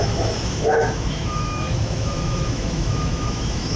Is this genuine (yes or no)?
no